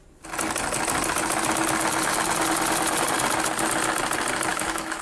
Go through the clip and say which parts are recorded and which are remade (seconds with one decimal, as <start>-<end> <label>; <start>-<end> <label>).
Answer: 0.0-4.5 recorded; 4.5-5.0 remade